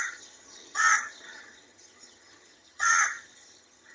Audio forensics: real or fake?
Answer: fake